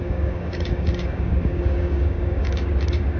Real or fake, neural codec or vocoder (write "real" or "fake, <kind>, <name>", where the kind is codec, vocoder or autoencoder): fake, codec, DAC